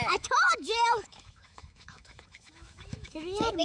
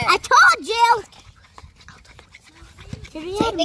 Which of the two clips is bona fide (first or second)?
second